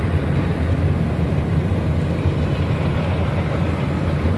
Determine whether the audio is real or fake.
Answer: real